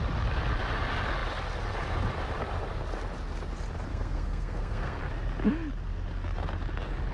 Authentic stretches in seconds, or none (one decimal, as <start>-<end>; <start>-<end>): 0.0-3.9; 5.0-7.1

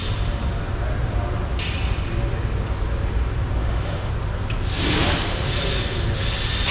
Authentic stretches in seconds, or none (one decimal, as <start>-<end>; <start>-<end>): 0.0-3.6; 4.1-6.7